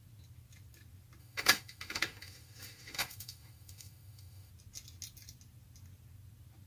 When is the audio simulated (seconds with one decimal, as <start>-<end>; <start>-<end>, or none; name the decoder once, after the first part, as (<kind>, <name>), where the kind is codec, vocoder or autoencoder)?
1.2-4.5 (autoencoder, DAC-VAE)